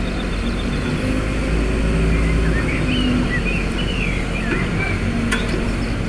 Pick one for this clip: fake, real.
real